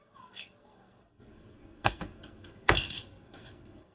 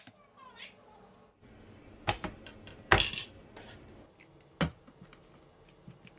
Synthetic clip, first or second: first